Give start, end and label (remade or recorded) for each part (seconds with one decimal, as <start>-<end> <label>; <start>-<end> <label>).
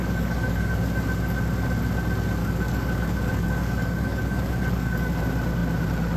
0.0-0.8 remade; 0.8-2.4 recorded; 2.4-5.1 remade; 5.1-6.2 recorded